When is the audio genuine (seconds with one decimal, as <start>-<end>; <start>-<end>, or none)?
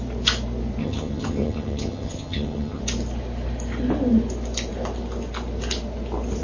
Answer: 0.0-0.8; 2.8-6.4